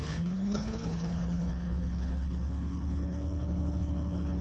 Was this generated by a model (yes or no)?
yes